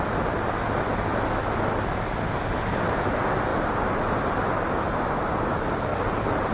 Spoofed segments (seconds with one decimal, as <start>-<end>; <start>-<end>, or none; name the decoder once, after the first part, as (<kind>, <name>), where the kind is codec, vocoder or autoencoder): 3.5-4.7 (vocoder, BigVGAN v2); 5.9-6.5

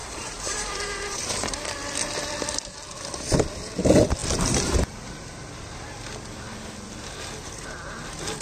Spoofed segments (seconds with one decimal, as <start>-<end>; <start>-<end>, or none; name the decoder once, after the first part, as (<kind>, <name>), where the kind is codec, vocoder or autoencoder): 0.0-1.2 (vocoder, BigVGAN v2)

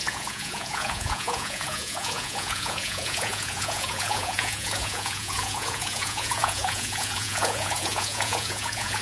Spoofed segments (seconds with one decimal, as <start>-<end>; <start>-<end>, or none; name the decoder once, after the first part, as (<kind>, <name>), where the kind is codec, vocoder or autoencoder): 0.0-9.0 (vocoder, Vocos)

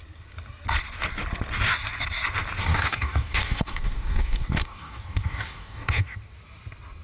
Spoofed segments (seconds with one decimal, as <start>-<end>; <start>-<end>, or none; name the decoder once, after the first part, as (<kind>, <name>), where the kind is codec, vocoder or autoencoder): 2.6-6.2 (codec, DAC)

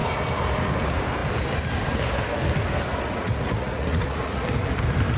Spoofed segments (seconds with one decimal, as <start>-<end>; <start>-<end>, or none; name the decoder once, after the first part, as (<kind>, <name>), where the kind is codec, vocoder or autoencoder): 2.9-4.4 (vocoder, Vocos)